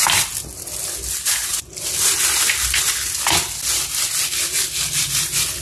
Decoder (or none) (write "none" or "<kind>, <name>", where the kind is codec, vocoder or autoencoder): none